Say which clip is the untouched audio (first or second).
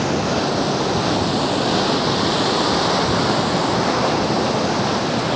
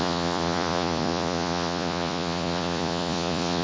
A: first